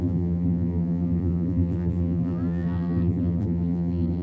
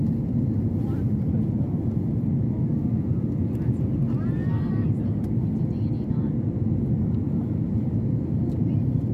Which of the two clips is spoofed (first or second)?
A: first